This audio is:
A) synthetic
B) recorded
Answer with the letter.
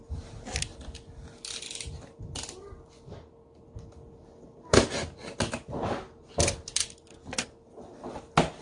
B